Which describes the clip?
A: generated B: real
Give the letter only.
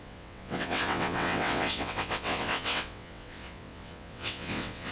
A